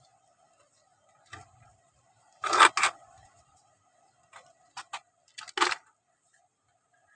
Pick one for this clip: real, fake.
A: real